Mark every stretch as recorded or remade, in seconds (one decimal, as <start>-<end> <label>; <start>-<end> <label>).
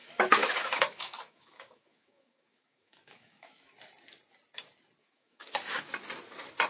0.0-3.7 remade; 3.7-5.0 recorded; 5.0-5.9 remade; 5.9-6.7 recorded